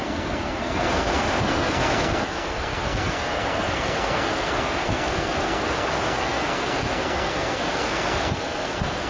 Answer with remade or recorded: remade